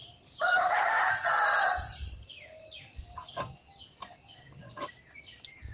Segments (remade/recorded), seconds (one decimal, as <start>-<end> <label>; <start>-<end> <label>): 0.0-1.1 remade; 1.1-1.7 recorded; 1.7-2.8 remade; 2.8-5.7 recorded